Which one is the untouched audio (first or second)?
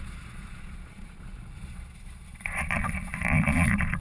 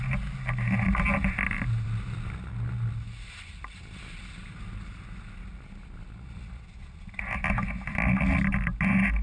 second